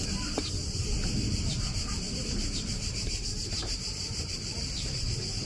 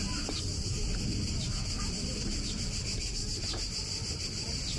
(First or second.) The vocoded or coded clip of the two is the first